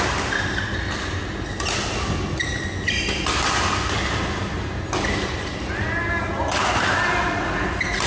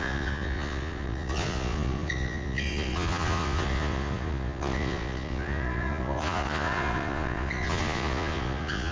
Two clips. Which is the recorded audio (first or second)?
first